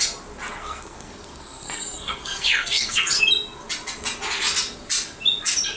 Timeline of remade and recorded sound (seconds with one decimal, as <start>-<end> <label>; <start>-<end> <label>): 0.0-0.5 recorded; 0.5-3.2 remade; 3.2-5.8 recorded